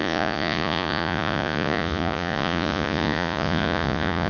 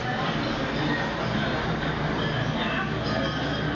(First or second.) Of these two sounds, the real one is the second